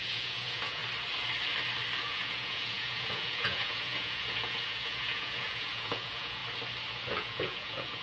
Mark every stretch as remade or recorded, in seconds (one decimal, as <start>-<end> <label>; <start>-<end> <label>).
0.0-0.8 remade; 0.8-2.0 recorded; 2.0-6.4 remade; 6.4-6.9 recorded; 6.9-8.0 remade

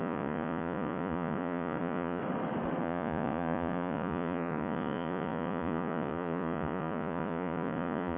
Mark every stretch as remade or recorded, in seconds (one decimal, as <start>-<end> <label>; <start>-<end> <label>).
0.0-2.2 remade; 2.2-2.8 recorded; 2.8-8.2 remade

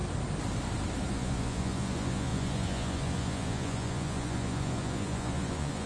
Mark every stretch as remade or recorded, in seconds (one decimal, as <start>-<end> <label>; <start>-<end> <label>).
0.0-1.1 recorded; 1.1-5.9 remade

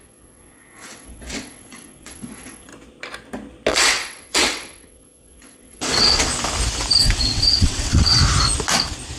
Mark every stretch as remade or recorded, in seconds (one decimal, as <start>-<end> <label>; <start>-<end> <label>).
0.0-2.7 remade; 2.7-3.7 recorded; 3.7-6.3 remade; 6.3-7.0 recorded; 7.0-8.2 remade; 8.2-9.2 recorded

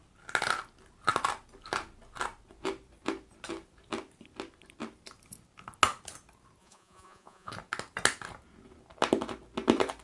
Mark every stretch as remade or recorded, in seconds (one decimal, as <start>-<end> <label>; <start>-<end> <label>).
0.0-6.6 recorded; 6.6-7.5 remade; 7.5-10.0 recorded

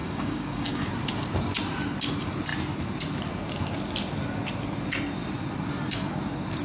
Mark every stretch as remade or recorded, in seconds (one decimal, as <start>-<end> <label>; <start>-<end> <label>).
0.0-0.9 remade; 0.9-6.6 recorded

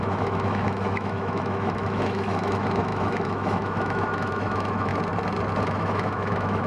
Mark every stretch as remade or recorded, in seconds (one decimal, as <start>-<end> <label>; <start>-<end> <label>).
0.0-4.9 remade; 4.9-5.6 recorded; 5.6-6.7 remade

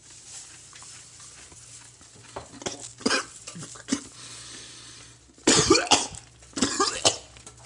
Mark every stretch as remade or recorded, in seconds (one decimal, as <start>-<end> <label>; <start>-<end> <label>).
0.0-1.2 remade; 1.2-2.9 recorded; 2.9-7.7 remade